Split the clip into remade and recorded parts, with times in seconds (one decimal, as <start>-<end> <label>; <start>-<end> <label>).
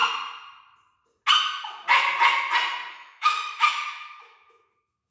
0.0-2.9 recorded; 2.9-5.1 remade